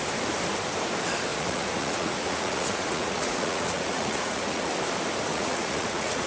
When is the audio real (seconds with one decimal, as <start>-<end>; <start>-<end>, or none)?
0.0-1.3; 4.7-5.3